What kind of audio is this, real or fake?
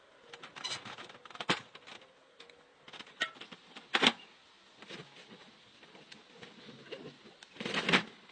real